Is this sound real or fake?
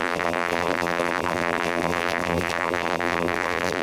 fake